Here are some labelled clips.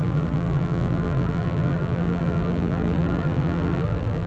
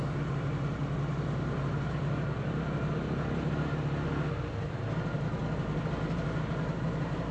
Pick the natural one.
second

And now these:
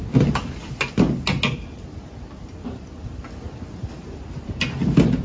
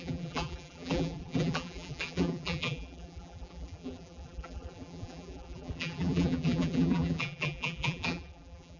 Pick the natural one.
first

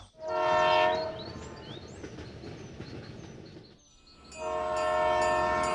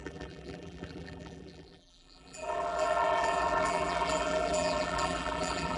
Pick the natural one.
first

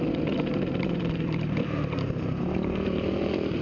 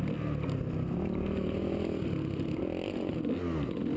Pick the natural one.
second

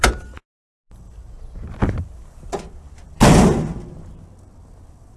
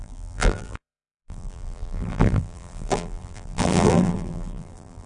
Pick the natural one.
first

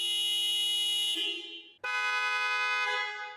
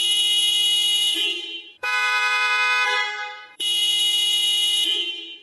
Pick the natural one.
first